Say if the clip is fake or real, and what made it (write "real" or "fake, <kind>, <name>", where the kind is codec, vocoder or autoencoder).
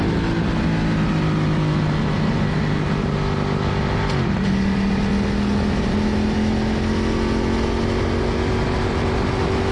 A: real